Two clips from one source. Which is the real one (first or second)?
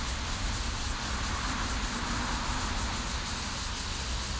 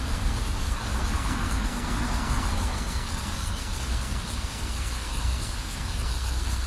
first